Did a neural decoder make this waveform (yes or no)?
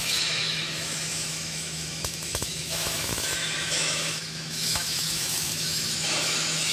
yes